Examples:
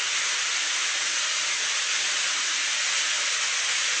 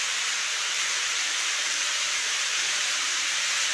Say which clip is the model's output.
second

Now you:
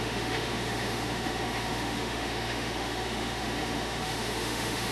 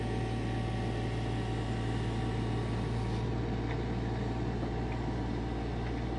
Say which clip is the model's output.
first